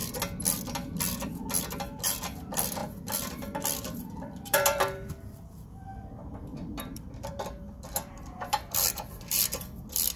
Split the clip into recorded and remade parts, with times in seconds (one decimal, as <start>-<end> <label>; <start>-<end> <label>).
0.0-1.6 recorded; 1.6-2.8 remade; 2.8-3.3 recorded; 3.3-10.2 remade